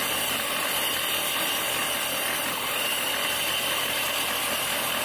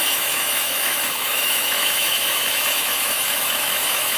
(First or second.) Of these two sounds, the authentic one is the first